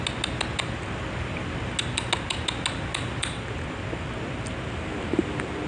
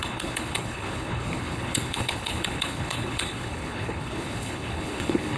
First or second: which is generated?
second